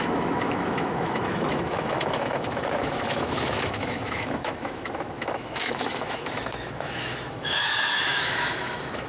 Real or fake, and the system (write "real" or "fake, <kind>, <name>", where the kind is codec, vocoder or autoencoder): fake, autoencoder, DAC-VAE